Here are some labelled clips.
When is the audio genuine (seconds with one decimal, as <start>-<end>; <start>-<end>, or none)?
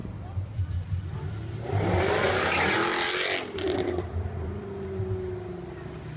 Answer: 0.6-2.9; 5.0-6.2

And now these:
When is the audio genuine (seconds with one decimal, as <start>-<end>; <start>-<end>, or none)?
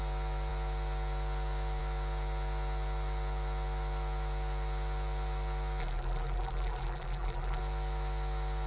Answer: 0.0-5.8; 7.6-8.7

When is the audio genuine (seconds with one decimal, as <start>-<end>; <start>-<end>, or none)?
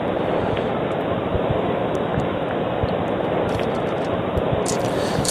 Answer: 0.7-1.3; 2.1-3.5